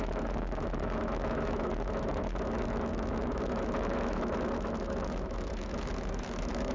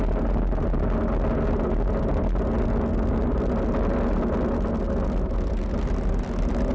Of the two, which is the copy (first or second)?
first